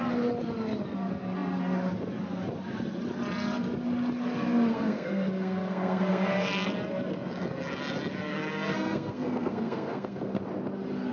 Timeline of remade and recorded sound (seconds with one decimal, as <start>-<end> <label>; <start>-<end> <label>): 0.0-4.7 recorded; 4.7-6.5 remade; 6.5-8.3 recorded; 8.3-10.4 remade; 10.4-11.1 recorded